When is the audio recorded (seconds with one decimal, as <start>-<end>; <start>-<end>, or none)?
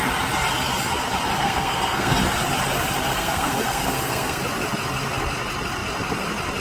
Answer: 0.0-1.4; 2.1-3.1; 4.4-6.6